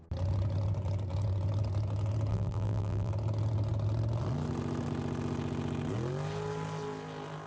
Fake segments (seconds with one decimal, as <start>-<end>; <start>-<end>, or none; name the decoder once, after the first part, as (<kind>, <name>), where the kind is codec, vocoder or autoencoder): 2.3-3.1 (vocoder, BigVGAN v2)